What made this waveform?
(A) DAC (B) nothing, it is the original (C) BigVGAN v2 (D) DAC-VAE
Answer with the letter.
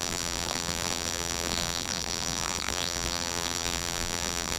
C